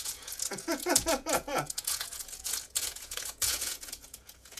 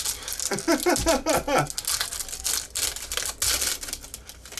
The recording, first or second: second